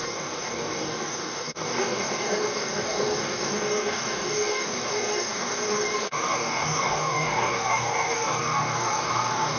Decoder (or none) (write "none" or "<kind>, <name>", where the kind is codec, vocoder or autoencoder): codec, DAC